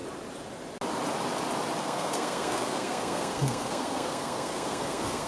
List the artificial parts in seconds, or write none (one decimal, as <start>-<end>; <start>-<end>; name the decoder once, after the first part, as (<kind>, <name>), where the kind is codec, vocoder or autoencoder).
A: 1.8-5.3 (codec, SNAC)